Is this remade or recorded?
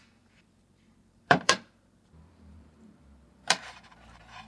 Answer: remade